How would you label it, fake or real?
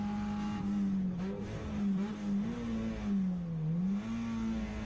real